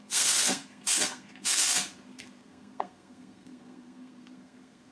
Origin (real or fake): fake